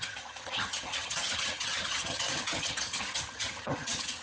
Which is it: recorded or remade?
remade